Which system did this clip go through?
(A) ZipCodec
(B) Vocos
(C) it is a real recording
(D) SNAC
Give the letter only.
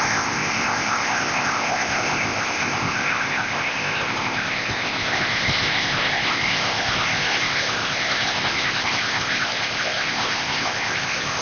A